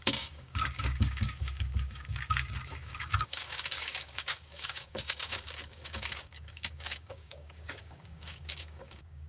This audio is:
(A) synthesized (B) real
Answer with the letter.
A